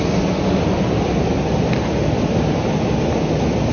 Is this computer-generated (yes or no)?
no